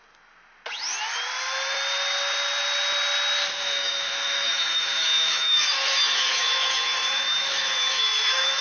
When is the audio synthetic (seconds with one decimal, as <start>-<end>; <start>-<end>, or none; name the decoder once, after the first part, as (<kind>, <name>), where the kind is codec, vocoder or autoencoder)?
3.6-8.6 (autoencoder, DAC-VAE)